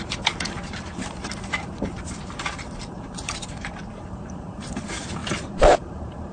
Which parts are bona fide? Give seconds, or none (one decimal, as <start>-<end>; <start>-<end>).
none